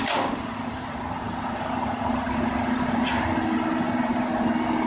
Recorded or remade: recorded